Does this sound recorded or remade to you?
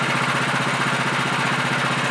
recorded